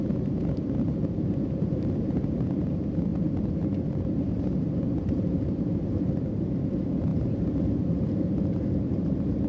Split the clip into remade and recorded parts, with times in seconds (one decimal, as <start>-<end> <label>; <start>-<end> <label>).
0.0-9.5 remade